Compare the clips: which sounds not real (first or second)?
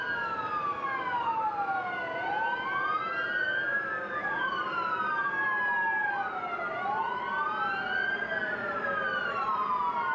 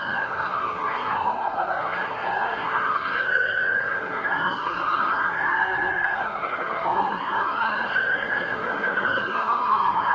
second